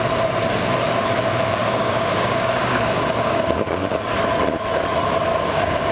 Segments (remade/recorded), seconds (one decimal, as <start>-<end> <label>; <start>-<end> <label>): 0.0-1.6 recorded; 1.6-4.1 remade; 4.1-5.3 recorded; 5.3-5.9 remade